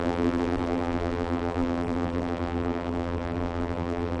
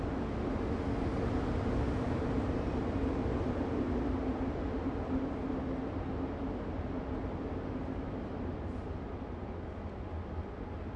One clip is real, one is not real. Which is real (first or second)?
second